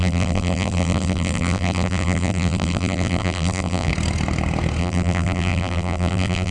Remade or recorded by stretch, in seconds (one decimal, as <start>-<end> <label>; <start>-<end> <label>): 0.0-3.9 remade; 3.9-4.8 recorded; 4.8-6.5 remade